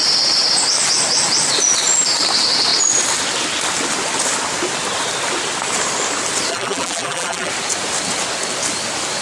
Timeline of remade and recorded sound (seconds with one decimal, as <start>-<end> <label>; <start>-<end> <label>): 0.0-6.5 recorded; 6.5-7.5 remade; 7.5-9.2 recorded